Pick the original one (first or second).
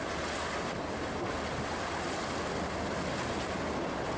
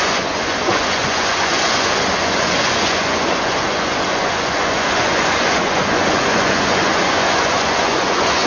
first